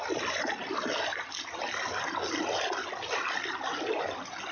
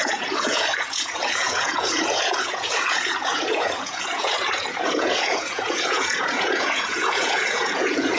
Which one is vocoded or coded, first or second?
second